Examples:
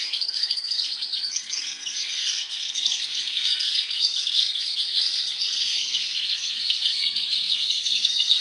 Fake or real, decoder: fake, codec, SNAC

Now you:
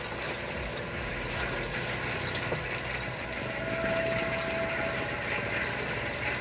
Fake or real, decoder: real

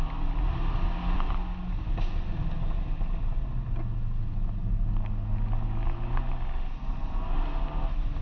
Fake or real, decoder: real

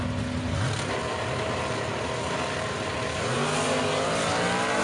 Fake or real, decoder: real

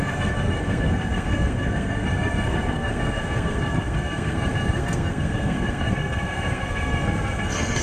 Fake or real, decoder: fake, codec, SNAC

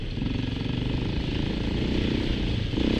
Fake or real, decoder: real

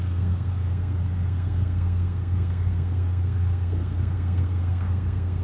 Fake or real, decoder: fake, codec, SNAC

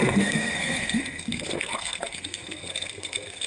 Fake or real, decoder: fake, codec, SNAC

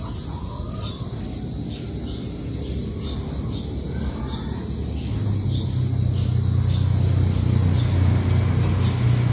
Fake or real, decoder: real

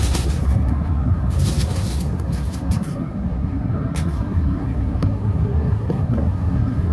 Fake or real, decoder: fake, codec, SNAC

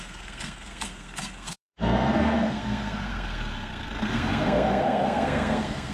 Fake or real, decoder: fake, codec, SNAC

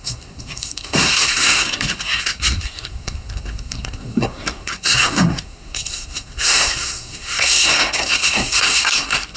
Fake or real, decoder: fake, codec, SNAC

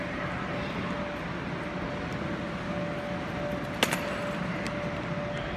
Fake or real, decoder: real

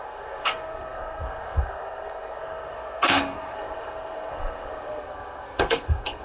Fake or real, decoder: fake, codec, SNAC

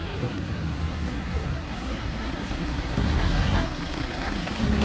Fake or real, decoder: fake, codec, SNAC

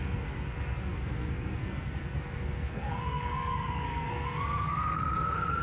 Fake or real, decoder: fake, codec, SNAC